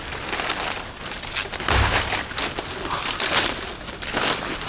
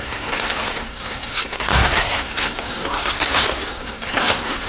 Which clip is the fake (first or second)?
second